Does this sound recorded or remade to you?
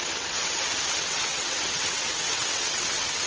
remade